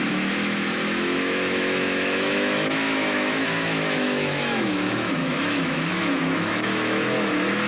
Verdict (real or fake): fake